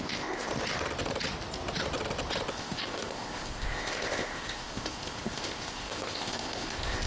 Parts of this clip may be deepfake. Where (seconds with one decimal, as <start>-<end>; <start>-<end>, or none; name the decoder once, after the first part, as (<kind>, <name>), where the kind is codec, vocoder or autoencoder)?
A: 0.0-0.5 (codec, ZipCodec); 2.5-7.1